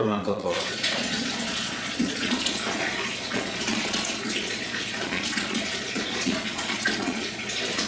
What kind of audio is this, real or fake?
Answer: fake